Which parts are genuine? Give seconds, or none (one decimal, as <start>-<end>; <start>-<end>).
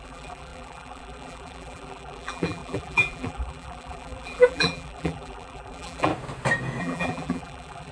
6.1-6.8